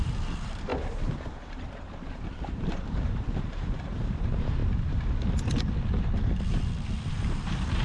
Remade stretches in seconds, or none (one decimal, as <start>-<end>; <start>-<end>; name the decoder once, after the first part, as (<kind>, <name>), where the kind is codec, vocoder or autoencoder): 0.0-4.6 (vocoder, BigVGAN v2); 7.1-7.8